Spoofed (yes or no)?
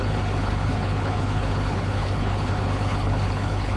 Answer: yes